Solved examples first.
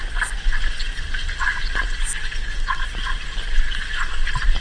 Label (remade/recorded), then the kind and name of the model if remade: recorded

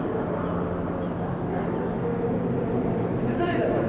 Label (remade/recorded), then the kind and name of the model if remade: recorded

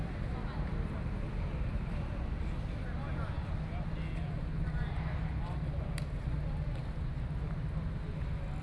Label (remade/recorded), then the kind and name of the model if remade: recorded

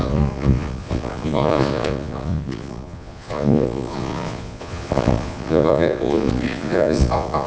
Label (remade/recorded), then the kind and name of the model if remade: remade, vocoder, Vocos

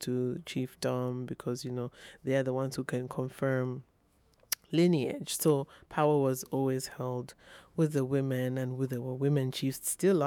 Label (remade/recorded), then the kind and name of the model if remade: remade, autoencoder, DAC-VAE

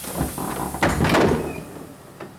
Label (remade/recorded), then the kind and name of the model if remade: recorded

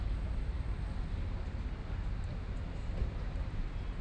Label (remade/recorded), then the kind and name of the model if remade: recorded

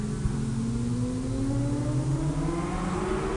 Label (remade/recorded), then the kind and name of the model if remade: recorded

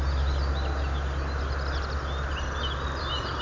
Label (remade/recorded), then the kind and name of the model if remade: recorded